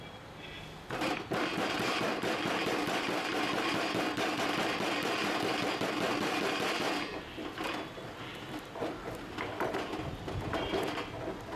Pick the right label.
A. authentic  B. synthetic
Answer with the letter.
A